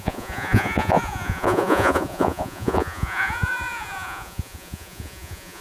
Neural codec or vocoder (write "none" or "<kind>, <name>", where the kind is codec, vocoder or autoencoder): vocoder, Vocos